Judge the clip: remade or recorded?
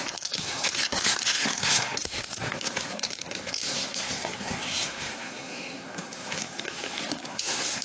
remade